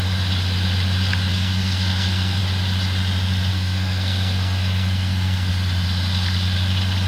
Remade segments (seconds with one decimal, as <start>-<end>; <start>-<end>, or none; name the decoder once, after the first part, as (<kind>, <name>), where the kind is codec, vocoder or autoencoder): 1.3-2.4 (codec, SNAC); 3.5-5.5